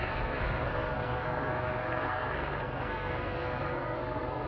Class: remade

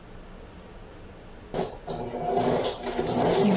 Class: recorded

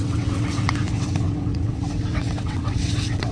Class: remade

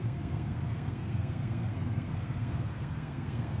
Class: remade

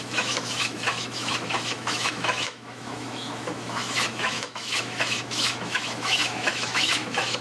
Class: remade